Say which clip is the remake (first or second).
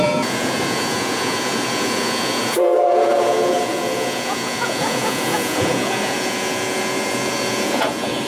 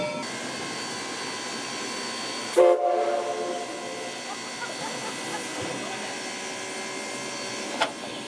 first